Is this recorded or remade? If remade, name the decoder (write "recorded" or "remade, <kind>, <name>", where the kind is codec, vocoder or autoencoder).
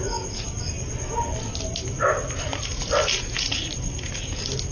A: recorded